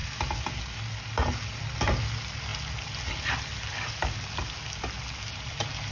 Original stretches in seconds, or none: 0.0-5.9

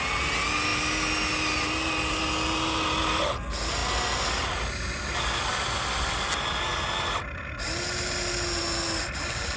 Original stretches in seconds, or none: 0.0-9.6

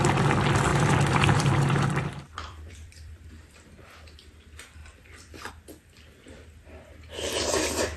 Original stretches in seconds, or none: 0.0-0.7; 3.3-4.8; 5.5-8.0

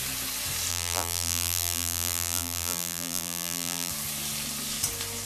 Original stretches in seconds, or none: 0.0-0.7; 3.9-5.3

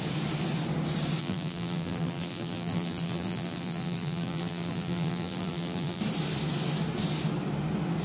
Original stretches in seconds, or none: 0.0-1.2; 6.0-8.0

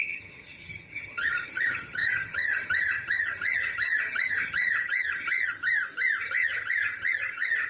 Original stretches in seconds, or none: 5.5-6.2

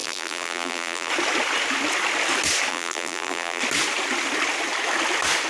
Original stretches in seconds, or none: 1.1-2.7; 3.6-5.5

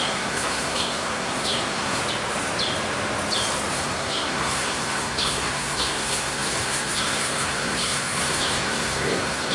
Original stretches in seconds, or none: 2.0-3.7